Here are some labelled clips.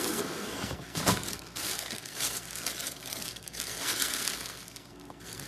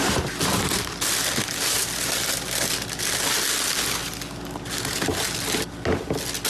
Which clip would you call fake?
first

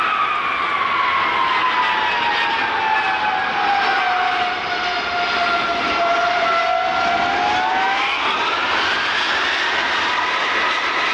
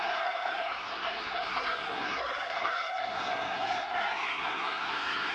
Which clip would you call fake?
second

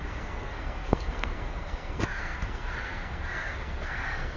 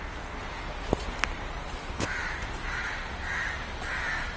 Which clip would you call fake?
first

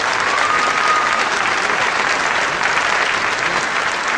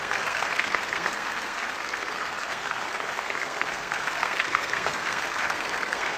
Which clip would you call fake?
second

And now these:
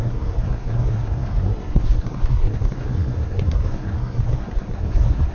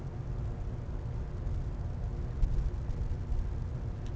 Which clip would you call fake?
first